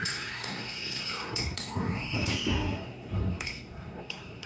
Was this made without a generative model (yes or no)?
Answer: no